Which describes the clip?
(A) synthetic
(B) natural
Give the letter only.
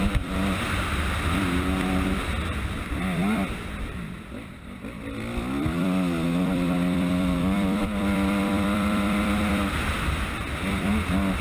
A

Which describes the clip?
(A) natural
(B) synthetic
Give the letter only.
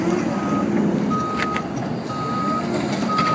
A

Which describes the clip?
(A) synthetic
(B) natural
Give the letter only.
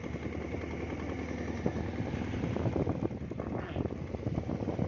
B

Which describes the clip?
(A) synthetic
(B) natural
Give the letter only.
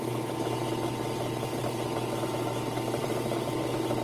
B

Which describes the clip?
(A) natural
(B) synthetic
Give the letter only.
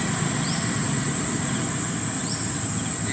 A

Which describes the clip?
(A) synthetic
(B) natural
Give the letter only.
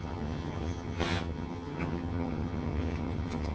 A